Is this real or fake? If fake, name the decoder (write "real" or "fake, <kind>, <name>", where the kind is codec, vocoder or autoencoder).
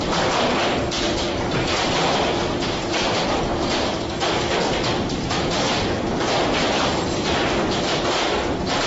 fake, vocoder, BigVGAN v2